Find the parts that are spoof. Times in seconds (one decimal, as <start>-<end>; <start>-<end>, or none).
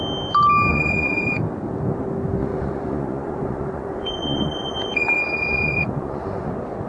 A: 0.7-1.4; 2.4-6.5